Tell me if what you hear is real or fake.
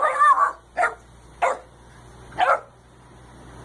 real